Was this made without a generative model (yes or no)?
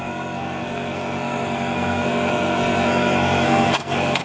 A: no